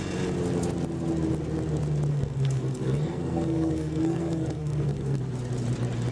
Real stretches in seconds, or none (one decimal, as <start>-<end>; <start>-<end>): 0.0-2.1; 5.2-6.1